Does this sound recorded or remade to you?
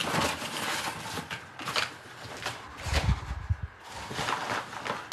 recorded